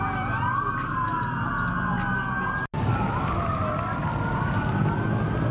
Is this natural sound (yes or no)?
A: yes